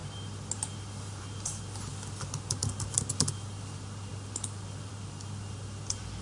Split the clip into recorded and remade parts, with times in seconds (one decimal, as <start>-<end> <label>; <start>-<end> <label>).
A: 0.0-6.2 recorded